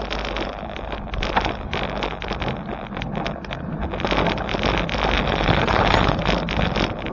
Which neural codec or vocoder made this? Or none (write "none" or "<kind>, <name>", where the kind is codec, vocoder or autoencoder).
none